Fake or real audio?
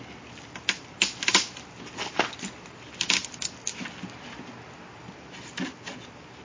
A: real